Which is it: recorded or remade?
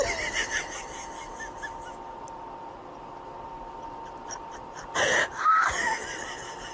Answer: recorded